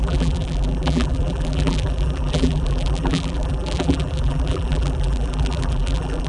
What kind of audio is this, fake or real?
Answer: fake